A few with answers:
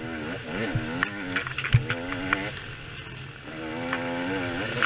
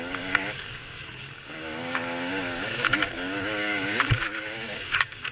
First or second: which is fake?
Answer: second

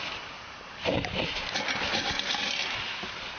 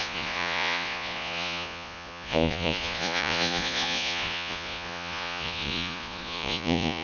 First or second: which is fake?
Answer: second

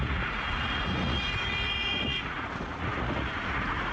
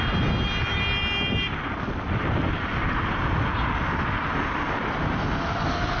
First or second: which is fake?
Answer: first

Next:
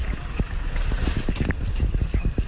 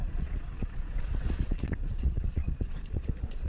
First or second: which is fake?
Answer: second